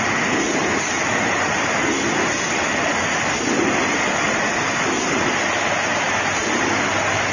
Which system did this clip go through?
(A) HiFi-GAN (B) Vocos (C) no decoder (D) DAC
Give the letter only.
C